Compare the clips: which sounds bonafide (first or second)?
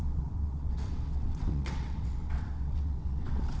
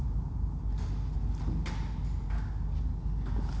second